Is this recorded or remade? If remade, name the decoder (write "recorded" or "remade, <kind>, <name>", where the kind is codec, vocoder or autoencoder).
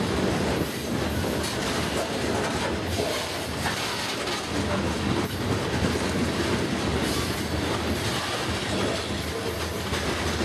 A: recorded